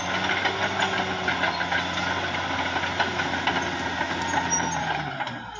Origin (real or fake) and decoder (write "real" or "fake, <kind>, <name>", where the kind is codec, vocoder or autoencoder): real